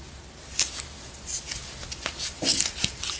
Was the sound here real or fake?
real